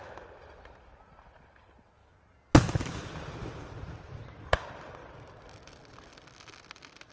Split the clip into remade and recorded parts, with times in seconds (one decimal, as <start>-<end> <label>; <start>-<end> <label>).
0.0-2.0 recorded; 2.0-3.7 remade; 3.7-7.1 recorded